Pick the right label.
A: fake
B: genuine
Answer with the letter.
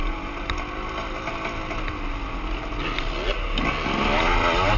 B